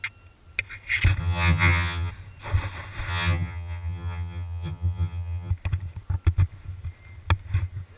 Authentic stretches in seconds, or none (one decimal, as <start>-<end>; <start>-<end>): 0.0-1.2; 2.1-3.1; 5.5-8.0